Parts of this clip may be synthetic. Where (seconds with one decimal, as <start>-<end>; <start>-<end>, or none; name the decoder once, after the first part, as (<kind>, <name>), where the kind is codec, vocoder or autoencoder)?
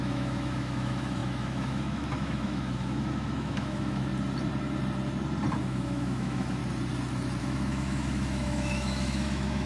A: 0.0-4.1 (autoencoder, DAC-VAE); 5.6-6.6; 7.4-9.7